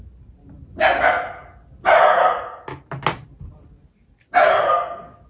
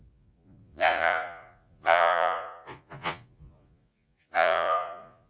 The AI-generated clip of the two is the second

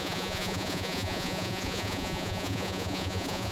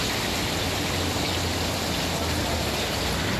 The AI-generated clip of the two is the first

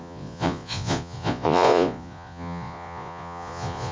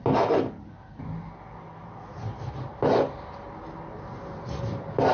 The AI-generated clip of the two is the first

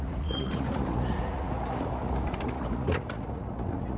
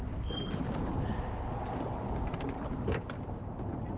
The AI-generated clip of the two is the first